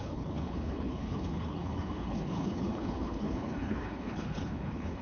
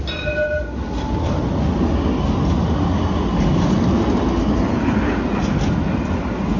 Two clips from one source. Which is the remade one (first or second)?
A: first